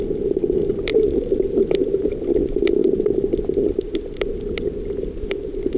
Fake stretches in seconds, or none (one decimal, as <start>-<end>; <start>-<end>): 0.0-0.9; 1.6-5.8